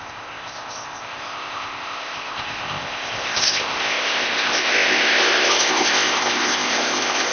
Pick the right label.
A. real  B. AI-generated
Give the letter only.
B